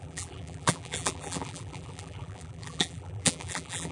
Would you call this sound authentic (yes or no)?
no